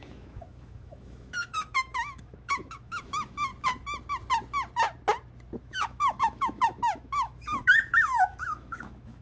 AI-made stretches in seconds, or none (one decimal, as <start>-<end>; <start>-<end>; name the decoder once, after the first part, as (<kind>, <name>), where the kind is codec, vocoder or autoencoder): 0.0-3.5 (autoencoder, DAC-VAE); 5.6-9.2